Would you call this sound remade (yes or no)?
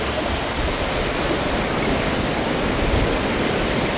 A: no